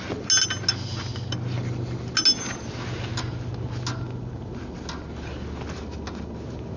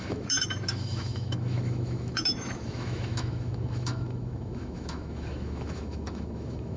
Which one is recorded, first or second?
first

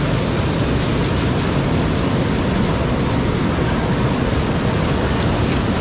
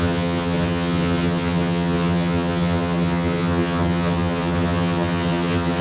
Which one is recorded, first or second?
first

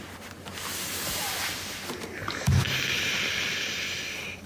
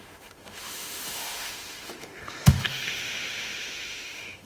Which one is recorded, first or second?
first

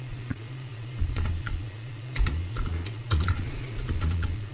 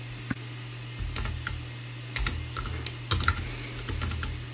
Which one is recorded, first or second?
second